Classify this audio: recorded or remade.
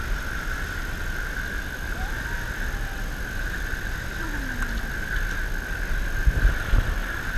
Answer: recorded